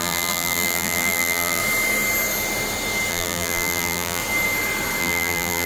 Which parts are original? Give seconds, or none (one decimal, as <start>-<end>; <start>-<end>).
1.6-3.1; 4.2-5.0